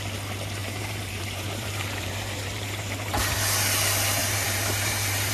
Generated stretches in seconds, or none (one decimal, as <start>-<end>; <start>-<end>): 0.6-3.3; 4.2-5.3